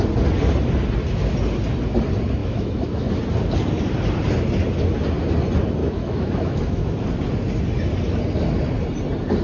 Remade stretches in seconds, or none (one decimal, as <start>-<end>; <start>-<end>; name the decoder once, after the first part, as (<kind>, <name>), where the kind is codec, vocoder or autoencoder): 2.4-3.1 (autoencoder, DAC-VAE); 5.8-6.9

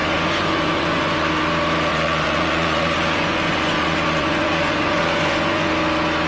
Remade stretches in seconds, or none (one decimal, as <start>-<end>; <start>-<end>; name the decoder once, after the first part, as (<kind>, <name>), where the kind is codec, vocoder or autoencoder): 0.0-1.3 (vocoder, Vocos); 1.9-5.7

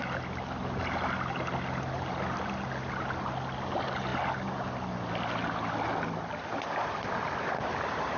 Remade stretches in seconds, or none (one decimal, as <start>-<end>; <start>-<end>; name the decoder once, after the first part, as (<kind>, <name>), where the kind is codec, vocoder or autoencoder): none

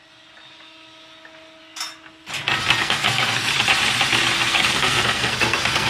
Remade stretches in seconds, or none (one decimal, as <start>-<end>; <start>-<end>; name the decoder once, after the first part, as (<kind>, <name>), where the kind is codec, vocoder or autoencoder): 2.8-3.5 (codec, SNAC); 4.5-5.9